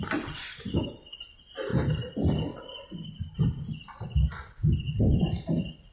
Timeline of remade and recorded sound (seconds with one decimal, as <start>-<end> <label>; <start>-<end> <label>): 0.0-5.9 recorded

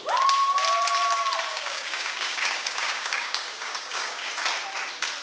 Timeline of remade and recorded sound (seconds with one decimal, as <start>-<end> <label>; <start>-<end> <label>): 0.0-1.5 recorded; 1.5-4.3 remade; 4.3-5.2 recorded

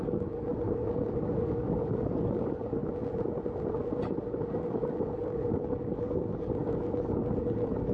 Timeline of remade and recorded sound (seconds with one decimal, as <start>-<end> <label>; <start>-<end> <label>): 0.0-2.8 remade; 2.8-4.2 recorded; 4.2-7.9 remade

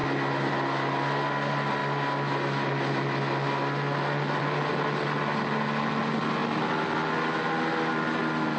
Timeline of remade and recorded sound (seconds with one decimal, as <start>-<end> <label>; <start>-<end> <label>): 0.0-8.6 recorded

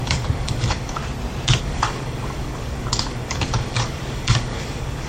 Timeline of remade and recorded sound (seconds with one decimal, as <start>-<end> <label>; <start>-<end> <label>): 0.0-1.0 remade; 1.0-1.6 recorded; 1.6-5.1 remade

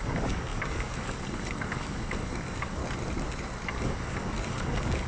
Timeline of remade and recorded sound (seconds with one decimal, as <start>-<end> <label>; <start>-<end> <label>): 0.0-2.8 remade; 2.8-3.7 recorded; 3.7-5.1 remade

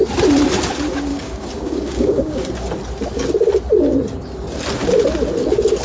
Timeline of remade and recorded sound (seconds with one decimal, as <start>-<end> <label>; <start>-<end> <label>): 0.0-1.1 recorded; 1.1-2.4 remade; 2.4-5.8 recorded